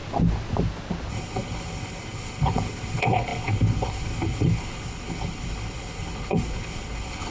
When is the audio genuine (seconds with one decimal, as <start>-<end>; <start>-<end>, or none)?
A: 0.0-1.1